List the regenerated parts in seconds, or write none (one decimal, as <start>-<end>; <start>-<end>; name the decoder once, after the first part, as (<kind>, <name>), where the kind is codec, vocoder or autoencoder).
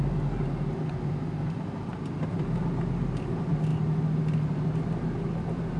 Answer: none